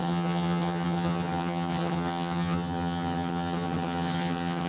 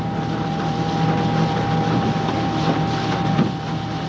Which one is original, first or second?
second